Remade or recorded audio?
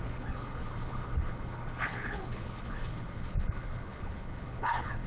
remade